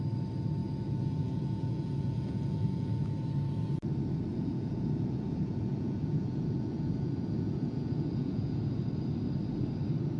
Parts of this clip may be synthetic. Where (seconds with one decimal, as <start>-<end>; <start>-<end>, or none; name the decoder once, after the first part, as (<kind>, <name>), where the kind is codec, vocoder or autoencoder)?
0.6-3.1 (vocoder, Vocos); 4.3-8.6